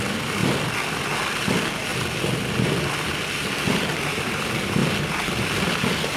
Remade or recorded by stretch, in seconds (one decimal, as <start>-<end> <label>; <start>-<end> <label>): 0.0-6.2 recorded

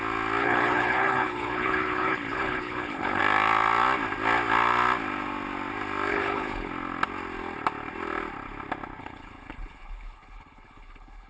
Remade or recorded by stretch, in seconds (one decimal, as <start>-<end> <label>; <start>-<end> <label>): 0.0-0.4 recorded; 0.4-3.2 remade; 3.2-6.1 recorded; 6.1-6.7 remade; 6.7-9.0 recorded; 9.0-11.3 remade

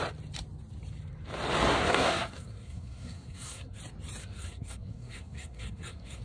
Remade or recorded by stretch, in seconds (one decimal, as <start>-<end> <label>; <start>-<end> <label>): 0.0-1.7 recorded; 1.7-3.8 remade; 3.8-4.2 recorded; 4.2-6.2 remade

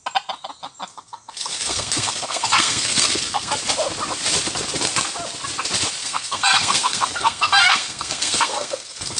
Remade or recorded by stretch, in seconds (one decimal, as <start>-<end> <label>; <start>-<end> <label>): 0.0-0.9 recorded; 0.9-3.5 remade; 3.5-6.0 recorded; 6.0-9.2 remade

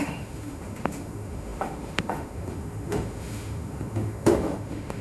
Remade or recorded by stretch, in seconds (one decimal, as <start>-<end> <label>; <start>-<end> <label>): 0.0-5.0 remade

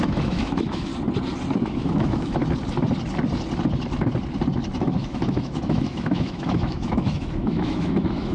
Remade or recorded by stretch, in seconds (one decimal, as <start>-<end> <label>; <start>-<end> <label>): 0.0-0.9 remade; 0.9-1.6 recorded; 1.6-2.4 remade; 2.4-4.8 recorded; 4.8-8.3 remade

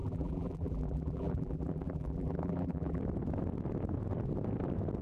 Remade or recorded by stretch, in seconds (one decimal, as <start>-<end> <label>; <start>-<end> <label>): 0.0-3.0 remade; 3.0-5.0 recorded

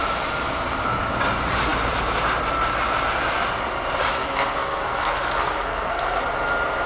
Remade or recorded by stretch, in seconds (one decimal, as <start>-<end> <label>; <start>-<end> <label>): 0.0-4.2 recorded; 4.2-6.2 remade; 6.2-6.9 recorded